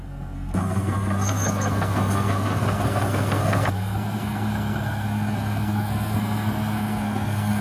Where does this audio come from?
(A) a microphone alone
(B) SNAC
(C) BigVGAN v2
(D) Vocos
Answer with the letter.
B